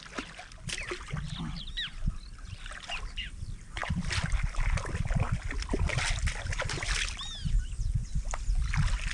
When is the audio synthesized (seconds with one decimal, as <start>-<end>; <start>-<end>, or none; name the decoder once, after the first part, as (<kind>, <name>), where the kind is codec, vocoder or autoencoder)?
none